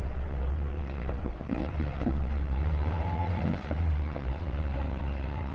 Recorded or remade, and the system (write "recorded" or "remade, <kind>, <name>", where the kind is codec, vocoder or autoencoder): remade, vocoder, WaveNeXt